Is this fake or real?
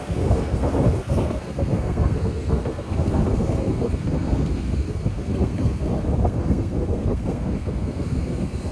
fake